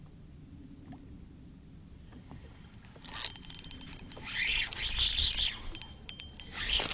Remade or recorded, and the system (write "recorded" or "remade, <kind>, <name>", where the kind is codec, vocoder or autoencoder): recorded